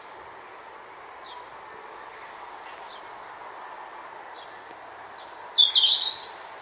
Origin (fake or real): real